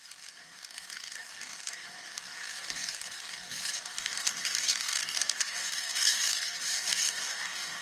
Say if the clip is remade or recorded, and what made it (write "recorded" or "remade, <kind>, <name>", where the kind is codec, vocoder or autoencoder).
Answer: remade, codec, DAC